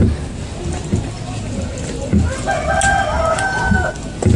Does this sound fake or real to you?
real